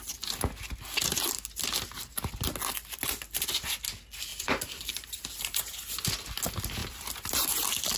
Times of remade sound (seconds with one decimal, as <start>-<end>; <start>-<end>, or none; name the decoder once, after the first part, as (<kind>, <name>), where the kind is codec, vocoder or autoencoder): 4.3-6.0 (vocoder, BigVGAN v2)